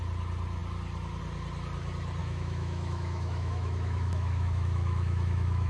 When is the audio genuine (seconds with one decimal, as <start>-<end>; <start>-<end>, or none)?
0.0-2.2